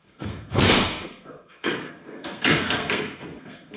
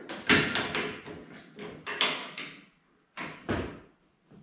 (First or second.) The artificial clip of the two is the first